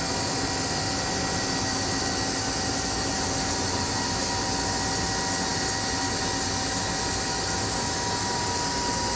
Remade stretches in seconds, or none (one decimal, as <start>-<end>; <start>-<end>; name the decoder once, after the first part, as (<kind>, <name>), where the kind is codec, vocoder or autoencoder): none